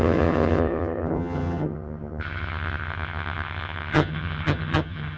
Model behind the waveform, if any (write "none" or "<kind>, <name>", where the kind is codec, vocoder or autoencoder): vocoder, HiFi-GAN